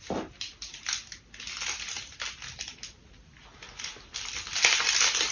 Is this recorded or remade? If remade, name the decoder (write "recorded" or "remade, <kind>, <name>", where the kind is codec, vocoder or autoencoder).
recorded